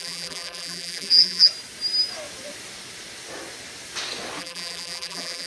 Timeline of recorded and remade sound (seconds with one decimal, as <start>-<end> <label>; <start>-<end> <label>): 0.0-1.5 remade; 1.5-4.4 recorded; 4.4-5.5 remade